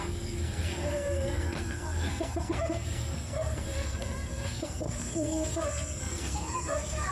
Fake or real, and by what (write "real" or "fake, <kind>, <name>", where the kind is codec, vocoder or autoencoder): fake, codec, SNAC